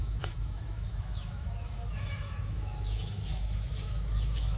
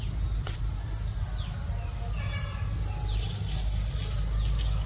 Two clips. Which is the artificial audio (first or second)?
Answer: first